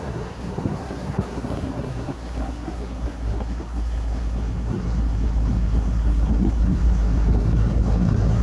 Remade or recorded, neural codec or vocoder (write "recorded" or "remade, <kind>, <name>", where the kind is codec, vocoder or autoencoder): remade, codec, SNAC